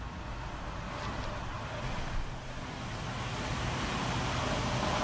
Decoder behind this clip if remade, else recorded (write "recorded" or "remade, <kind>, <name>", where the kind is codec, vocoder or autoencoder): recorded